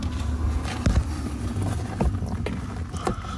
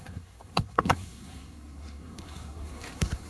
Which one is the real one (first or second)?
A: first